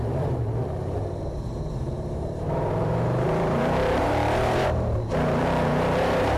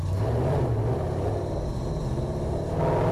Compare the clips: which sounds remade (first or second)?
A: first